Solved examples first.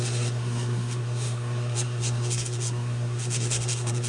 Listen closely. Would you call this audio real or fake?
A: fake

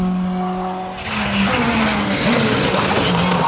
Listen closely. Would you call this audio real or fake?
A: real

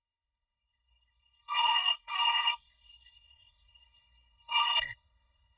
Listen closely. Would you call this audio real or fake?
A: fake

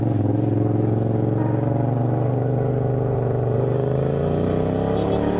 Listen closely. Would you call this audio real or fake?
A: real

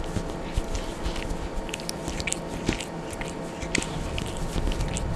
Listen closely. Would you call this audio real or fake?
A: real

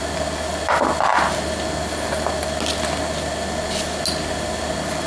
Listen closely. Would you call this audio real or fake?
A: real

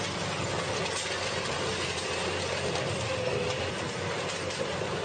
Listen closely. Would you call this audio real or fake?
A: real